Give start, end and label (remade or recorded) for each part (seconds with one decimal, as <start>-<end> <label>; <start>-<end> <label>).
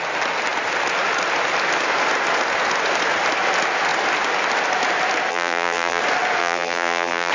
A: 0.0-5.3 recorded; 5.3-6.0 remade; 6.0-6.4 recorded; 6.4-7.3 remade